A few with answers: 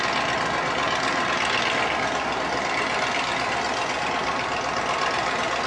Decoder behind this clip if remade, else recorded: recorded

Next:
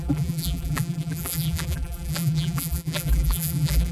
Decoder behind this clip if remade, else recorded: remade, vocoder, BigVGAN v2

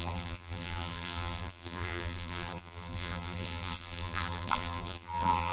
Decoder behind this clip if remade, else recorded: remade, vocoder, BigVGAN v2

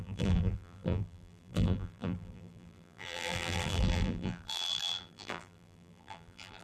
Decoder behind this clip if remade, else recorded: remade, vocoder, BigVGAN v2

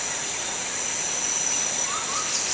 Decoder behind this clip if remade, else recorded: recorded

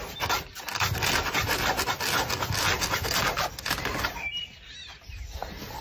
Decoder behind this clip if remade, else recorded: recorded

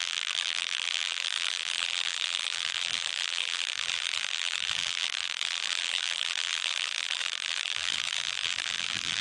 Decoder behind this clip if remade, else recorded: remade, vocoder, BigVGAN v2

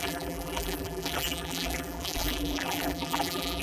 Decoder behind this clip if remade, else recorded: remade, vocoder, BigVGAN v2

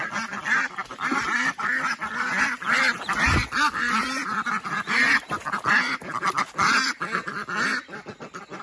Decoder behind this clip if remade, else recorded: recorded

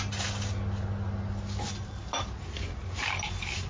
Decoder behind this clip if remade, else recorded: recorded